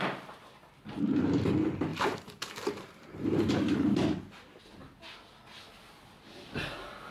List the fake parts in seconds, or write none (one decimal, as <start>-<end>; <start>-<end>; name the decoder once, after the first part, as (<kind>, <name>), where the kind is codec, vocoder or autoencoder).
1.9-3.5 (vocoder, BigVGAN v2)